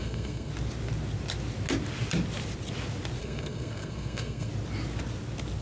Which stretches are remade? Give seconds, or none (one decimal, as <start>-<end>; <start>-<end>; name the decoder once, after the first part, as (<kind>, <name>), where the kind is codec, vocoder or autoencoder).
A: 0.0-0.5 (codec, SNAC); 3.2-4.5